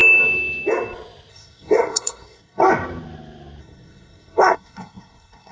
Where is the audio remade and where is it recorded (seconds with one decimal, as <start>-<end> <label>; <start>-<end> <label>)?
0.0-1.3 recorded; 1.3-2.6 remade; 2.6-3.6 recorded; 3.6-5.5 remade